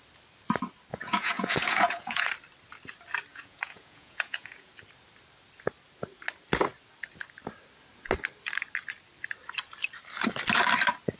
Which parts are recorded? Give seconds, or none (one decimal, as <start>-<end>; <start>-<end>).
0.0-0.9; 2.3-3.3; 4.7-11.2